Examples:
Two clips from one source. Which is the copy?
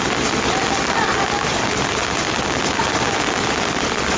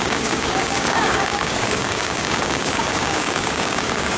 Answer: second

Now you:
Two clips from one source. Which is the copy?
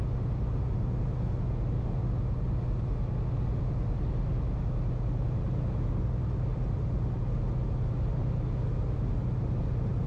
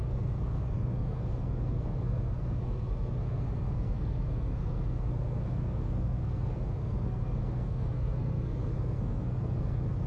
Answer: second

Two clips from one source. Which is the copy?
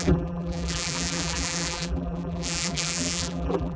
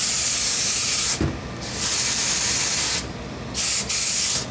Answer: first